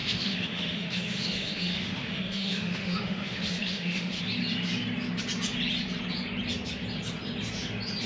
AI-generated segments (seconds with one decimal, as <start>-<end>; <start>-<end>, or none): 0.0-4.2